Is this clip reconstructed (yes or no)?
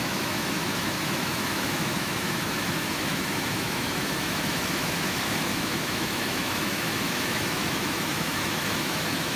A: yes